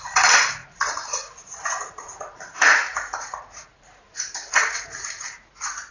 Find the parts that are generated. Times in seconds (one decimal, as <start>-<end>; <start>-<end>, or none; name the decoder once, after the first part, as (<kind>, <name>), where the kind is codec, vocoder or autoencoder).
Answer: 0.0-5.9 (vocoder, Vocos)